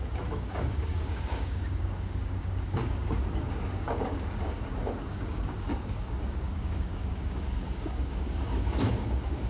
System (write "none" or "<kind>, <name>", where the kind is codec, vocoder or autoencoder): codec, DAC